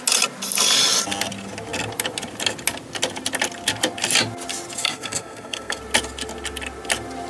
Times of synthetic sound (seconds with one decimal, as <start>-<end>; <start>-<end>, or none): 4.8-5.8